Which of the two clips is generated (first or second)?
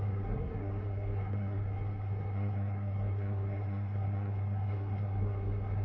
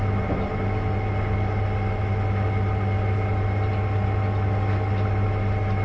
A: first